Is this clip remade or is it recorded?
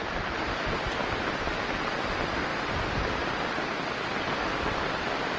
recorded